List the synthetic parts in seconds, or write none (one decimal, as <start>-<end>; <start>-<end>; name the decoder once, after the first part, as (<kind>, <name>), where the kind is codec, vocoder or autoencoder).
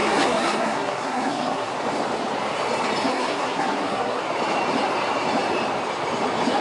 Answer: 0.0-1.7 (codec, SNAC); 3.1-4.2